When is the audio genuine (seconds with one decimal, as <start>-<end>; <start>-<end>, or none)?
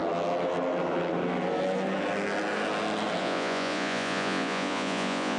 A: 0.0-3.2